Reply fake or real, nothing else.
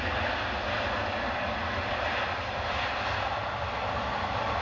real